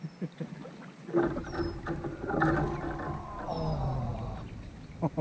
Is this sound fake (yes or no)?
no